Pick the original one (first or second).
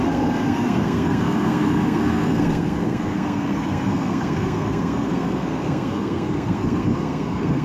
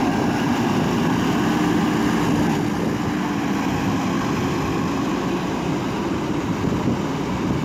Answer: second